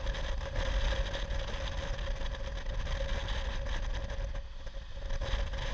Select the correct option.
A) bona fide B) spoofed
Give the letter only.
A